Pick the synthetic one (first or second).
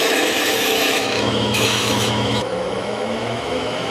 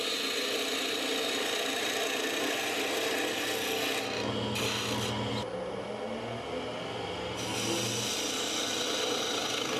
first